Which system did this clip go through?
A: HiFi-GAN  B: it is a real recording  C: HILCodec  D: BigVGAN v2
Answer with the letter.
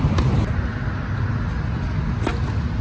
B